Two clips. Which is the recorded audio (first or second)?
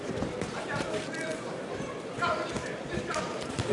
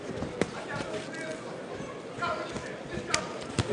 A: second